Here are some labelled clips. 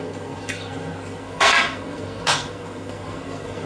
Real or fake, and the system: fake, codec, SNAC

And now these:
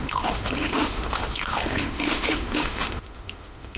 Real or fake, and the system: fake, autoencoder, DAC-VAE